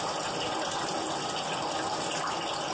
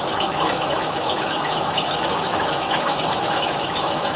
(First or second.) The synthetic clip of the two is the second